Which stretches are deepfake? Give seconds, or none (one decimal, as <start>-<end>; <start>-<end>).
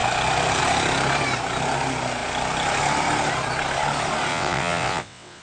4.3-5.4